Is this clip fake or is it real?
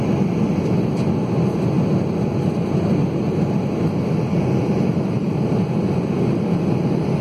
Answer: real